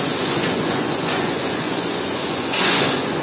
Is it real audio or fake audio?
fake